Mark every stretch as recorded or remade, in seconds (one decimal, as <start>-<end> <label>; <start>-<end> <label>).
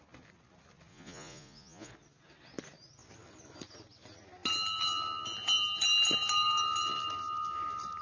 0.0-0.9 recorded; 0.9-1.9 remade; 1.9-8.0 recorded